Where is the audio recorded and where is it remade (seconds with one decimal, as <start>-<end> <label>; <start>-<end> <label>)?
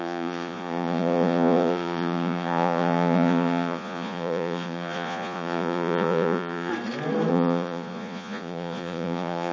0.0-6.7 remade; 6.7-7.3 recorded; 7.3-9.5 remade